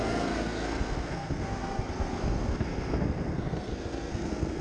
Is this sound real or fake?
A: fake